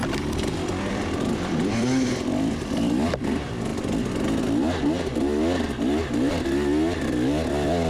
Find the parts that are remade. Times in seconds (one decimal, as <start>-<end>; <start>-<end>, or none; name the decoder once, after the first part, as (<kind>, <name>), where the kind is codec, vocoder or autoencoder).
0.0-3.7 (vocoder, BigVGAN v2); 6.3-7.9